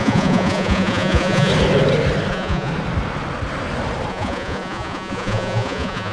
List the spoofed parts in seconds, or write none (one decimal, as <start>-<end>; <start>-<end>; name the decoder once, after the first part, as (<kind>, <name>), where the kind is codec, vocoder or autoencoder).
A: 0.0-1.5 (vocoder, Vocos); 2.3-2.7; 4.1-6.1